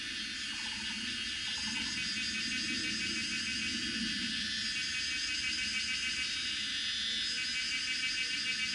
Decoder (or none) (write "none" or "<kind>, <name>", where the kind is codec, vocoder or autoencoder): none